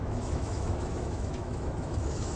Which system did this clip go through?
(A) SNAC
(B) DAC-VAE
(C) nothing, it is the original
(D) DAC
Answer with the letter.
B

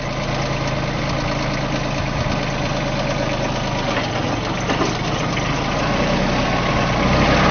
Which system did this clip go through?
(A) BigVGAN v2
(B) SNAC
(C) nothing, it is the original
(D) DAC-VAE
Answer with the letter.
C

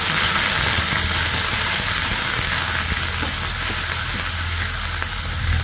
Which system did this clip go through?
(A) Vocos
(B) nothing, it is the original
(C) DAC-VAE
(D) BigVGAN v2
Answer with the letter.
B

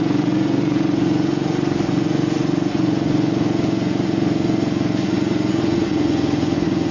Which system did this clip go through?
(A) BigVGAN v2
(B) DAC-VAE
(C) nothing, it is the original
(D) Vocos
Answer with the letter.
D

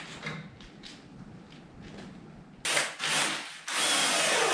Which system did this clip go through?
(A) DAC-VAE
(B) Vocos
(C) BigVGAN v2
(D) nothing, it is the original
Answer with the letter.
D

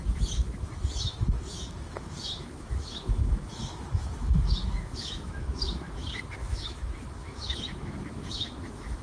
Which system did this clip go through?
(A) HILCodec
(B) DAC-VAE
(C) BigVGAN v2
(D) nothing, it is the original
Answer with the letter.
B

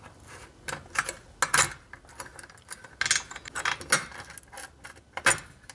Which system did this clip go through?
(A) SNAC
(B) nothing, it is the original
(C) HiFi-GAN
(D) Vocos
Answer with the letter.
B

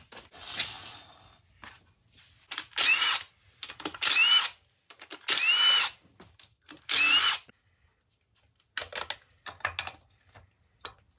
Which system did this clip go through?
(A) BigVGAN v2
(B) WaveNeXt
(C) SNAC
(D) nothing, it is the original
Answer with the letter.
D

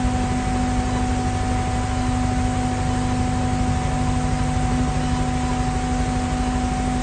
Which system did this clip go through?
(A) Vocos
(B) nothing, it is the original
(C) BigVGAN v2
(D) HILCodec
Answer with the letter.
B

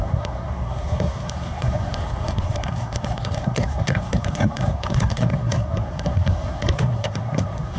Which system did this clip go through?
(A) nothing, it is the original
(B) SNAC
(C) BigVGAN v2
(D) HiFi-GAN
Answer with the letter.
B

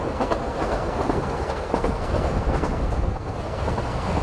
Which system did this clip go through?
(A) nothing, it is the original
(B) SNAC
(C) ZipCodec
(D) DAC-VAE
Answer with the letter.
B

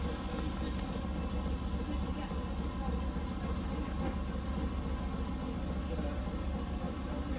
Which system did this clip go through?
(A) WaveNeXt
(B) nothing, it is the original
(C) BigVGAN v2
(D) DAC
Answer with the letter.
B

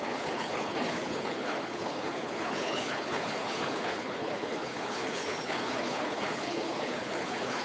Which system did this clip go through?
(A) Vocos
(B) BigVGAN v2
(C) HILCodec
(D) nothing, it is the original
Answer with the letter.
C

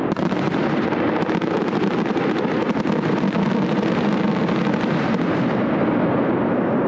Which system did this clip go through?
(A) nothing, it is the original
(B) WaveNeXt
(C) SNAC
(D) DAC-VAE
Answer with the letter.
A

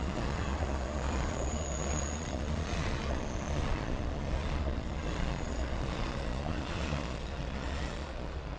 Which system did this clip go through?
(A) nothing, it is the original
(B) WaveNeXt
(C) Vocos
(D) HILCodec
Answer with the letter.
C